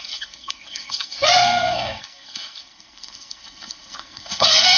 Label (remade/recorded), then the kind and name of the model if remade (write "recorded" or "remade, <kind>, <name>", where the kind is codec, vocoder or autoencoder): remade, codec, SNAC